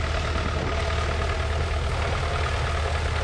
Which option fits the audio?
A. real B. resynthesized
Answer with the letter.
A